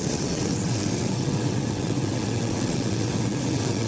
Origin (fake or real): fake